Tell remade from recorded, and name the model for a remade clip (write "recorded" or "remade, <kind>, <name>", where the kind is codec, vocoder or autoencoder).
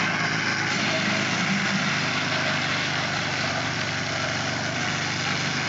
recorded